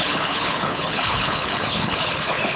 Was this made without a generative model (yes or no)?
no